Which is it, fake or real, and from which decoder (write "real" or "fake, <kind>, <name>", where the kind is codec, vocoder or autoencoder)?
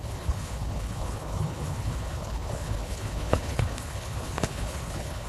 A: fake, codec, HILCodec